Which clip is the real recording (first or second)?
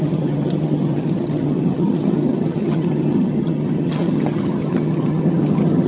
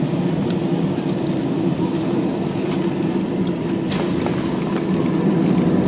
second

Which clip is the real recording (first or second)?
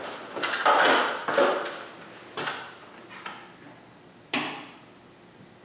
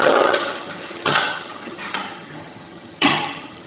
first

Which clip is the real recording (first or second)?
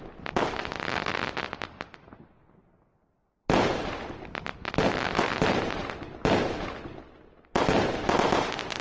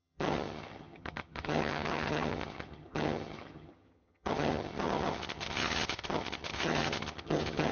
first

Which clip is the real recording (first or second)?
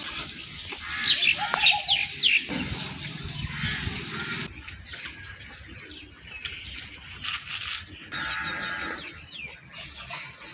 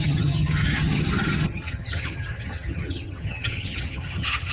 first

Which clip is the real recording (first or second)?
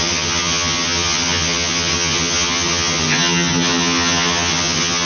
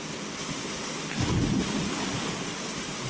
second